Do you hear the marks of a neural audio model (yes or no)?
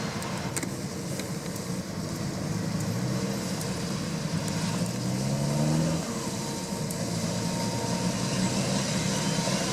no